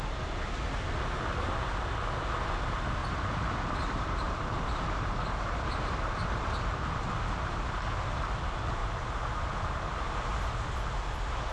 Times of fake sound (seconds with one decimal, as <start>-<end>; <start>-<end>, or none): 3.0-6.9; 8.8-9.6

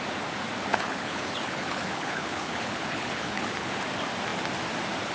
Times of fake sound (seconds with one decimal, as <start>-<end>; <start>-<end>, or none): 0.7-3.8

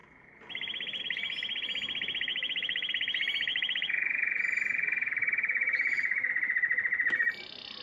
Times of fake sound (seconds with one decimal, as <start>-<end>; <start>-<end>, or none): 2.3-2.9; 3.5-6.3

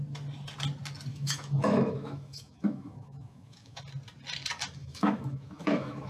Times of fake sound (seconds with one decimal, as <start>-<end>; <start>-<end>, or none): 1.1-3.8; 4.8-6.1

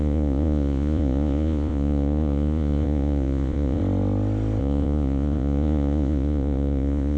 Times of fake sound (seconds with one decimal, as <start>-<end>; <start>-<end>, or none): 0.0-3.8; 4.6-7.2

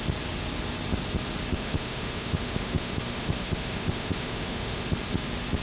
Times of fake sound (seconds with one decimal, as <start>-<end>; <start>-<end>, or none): 1.5-4.9